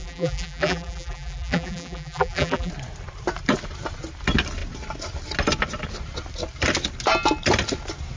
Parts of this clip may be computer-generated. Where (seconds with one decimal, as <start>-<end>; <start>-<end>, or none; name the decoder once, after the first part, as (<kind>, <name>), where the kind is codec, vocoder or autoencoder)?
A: 0.0-2.7 (vocoder, BigVGAN v2)